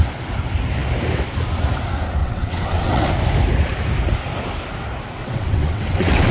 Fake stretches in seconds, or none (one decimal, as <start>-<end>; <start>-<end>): 2.2-3.1; 5.2-6.3